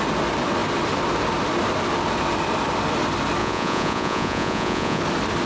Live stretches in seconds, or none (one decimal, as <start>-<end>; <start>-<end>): 0.0-3.4; 5.0-5.5